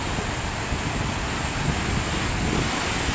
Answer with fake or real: real